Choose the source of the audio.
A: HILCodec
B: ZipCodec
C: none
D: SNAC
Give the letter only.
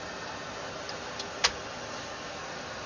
C